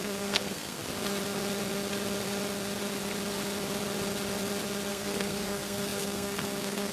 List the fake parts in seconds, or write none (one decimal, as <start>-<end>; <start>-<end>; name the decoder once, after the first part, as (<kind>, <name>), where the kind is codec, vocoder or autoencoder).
0.0-0.8 (codec, SNAC); 4.9-6.9